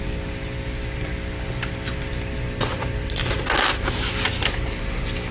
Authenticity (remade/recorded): recorded